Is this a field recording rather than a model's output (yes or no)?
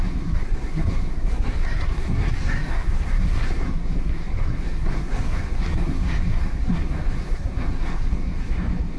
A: no